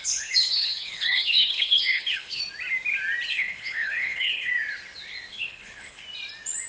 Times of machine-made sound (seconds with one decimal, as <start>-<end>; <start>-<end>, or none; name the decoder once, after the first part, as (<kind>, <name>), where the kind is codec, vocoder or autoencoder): 0.0-2.4 (codec, HILCodec); 3.3-4.5; 5.3-6.0